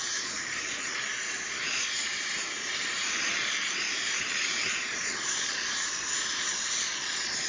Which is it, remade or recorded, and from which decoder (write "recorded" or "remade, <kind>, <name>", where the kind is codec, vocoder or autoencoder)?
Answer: remade, vocoder, BigVGAN v2